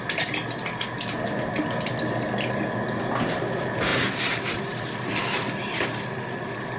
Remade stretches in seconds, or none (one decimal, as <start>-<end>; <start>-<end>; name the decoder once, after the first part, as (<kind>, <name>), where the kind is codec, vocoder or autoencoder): none